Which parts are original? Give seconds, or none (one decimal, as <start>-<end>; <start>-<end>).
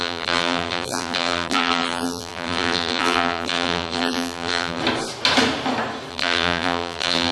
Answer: 4.8-6.1